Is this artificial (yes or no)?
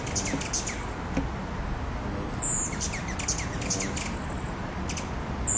no